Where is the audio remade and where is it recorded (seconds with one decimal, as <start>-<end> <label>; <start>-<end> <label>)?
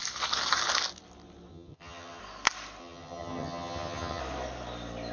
0.0-1.5 recorded; 1.5-2.2 remade; 2.2-2.8 recorded; 2.8-4.2 remade; 4.2-5.1 recorded